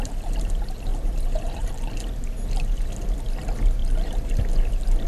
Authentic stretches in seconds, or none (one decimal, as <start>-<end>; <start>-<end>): 0.0-0.9; 1.7-3.8; 4.3-5.1